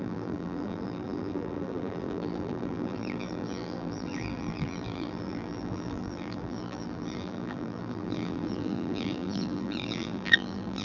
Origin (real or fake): fake